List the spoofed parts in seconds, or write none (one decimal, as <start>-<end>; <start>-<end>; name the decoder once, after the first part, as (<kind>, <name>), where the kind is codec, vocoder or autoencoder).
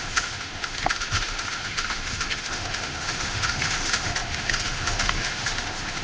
0.0-6.0 (autoencoder, DAC-VAE)